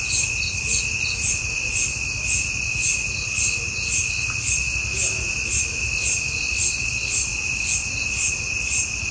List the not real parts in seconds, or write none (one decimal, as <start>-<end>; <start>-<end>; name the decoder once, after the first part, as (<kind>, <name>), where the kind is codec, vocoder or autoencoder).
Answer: none